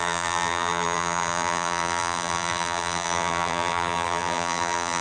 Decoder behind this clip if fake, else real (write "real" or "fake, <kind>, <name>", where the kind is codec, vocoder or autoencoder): fake, vocoder, BigVGAN v2